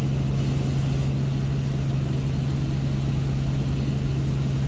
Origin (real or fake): real